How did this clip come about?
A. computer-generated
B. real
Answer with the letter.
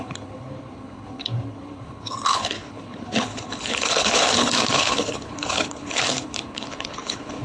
A